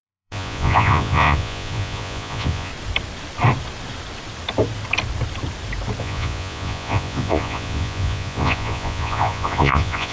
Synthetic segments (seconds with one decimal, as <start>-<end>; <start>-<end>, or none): 0.0-2.7; 6.0-10.1